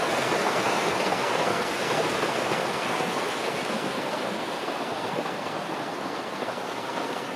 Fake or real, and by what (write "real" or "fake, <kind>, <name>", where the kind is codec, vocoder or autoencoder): fake, codec, SNAC